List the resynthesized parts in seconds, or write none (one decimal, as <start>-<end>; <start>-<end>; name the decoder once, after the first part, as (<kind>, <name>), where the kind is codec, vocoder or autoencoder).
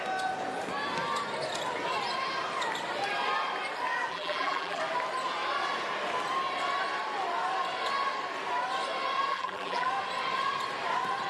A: 4.1-4.8 (vocoder, BigVGAN v2); 9.3-9.9